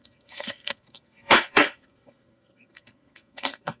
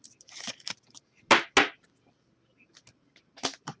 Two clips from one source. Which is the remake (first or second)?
first